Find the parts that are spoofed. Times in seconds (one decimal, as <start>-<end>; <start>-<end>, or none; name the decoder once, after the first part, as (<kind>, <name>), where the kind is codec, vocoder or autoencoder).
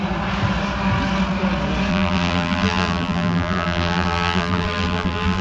1.9-5.4 (vocoder, BigVGAN v2)